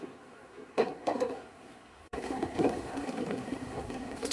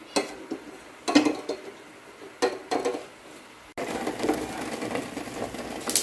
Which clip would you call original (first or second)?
second